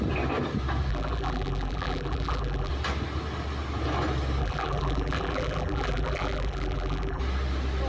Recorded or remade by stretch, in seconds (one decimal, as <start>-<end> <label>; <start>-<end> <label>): 0.0-0.9 recorded; 0.9-2.7 remade; 2.7-4.4 recorded; 4.4-7.2 remade; 7.2-7.9 recorded